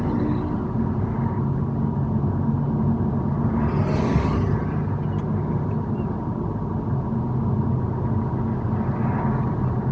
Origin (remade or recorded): recorded